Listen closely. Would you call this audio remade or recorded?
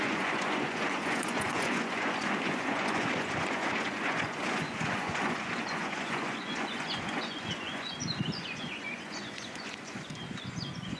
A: remade